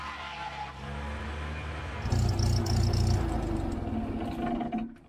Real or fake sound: real